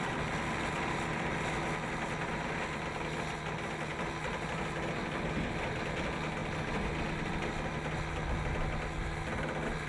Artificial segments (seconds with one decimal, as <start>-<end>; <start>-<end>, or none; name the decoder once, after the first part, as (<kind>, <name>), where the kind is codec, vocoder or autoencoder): none